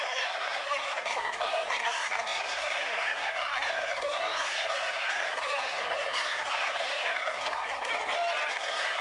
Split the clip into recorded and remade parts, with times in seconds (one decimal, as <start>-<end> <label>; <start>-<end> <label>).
0.0-7.9 remade; 7.9-8.5 recorded; 8.5-9.0 remade